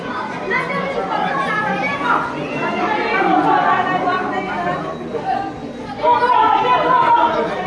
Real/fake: real